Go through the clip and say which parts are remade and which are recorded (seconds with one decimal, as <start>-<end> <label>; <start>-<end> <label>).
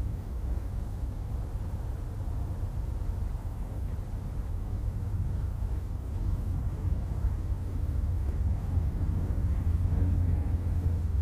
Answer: 0.0-1.3 remade; 1.3-3.4 recorded; 3.4-3.9 remade; 3.9-4.5 recorded; 4.5-11.2 remade